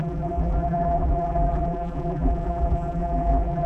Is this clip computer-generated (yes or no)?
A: yes